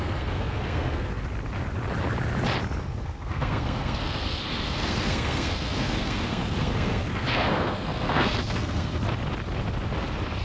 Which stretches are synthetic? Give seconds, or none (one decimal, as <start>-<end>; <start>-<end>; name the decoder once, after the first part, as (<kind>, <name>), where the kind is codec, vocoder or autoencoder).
0.0-1.1 (codec, SNAC); 2.8-9.0